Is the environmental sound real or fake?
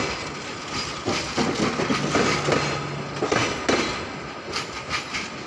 real